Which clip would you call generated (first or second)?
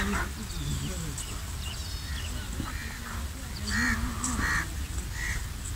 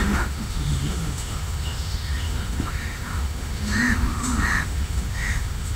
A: second